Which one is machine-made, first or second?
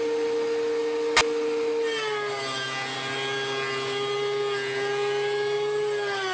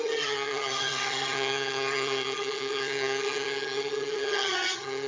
second